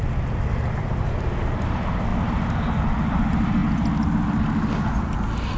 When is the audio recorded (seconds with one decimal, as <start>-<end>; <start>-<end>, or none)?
0.0-5.6